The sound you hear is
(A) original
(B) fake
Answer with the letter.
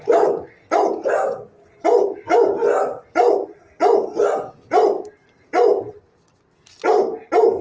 A